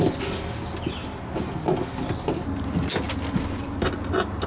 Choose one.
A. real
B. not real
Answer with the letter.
A